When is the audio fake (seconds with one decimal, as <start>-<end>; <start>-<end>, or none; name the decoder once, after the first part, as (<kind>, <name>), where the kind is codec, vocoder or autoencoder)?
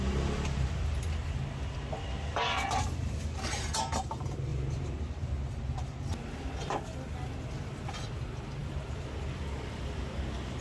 4.5-5.3 (vocoder, BigVGAN v2)